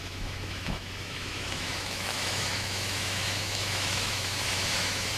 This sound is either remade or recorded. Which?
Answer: remade